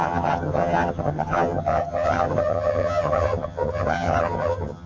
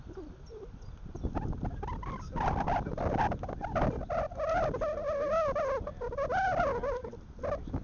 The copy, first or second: first